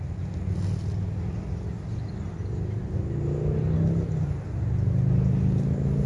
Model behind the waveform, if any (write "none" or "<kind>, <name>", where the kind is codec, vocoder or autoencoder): none